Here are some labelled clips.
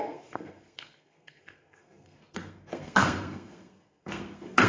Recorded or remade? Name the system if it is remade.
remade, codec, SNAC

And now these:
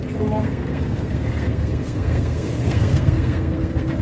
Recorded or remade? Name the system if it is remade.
remade, codec, SNAC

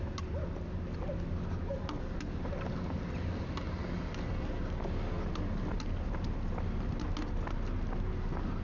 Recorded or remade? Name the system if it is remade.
recorded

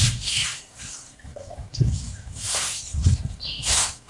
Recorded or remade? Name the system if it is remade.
remade, codec, SNAC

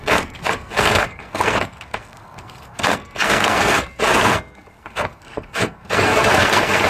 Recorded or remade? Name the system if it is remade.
remade, codec, SNAC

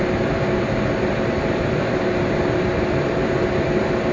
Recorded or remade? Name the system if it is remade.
recorded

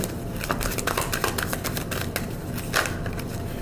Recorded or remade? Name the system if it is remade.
recorded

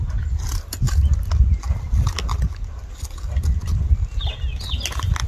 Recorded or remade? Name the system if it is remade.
recorded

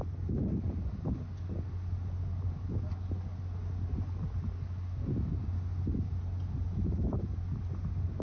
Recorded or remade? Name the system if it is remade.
recorded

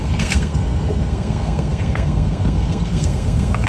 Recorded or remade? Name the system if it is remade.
remade, codec, SNAC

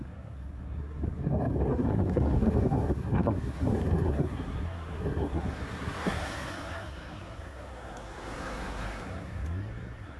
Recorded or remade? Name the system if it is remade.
remade, codec, SNAC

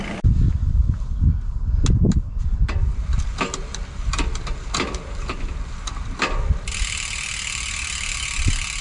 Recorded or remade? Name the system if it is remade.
recorded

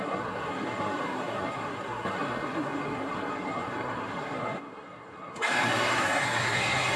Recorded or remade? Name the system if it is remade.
remade, codec, SNAC